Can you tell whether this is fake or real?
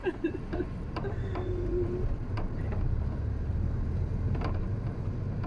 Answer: real